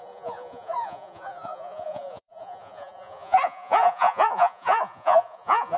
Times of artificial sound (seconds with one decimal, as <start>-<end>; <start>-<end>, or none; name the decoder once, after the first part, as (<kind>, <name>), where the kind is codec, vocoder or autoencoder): 0.0-5.8 (vocoder, Vocos)